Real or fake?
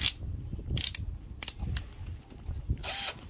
fake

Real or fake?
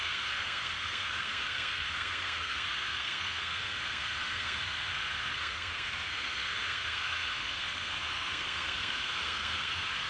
fake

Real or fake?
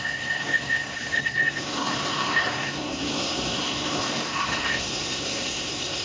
fake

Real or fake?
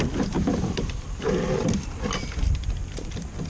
fake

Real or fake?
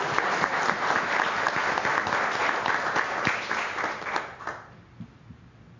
real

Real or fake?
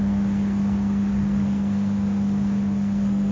fake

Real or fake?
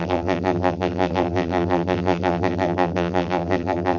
fake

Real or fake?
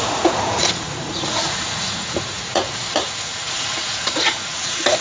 fake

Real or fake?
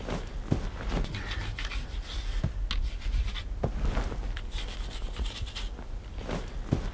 real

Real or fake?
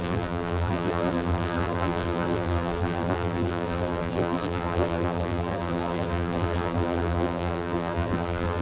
fake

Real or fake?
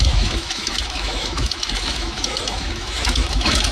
fake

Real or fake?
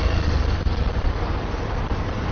real